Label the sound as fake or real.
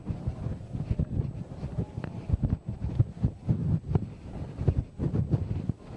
real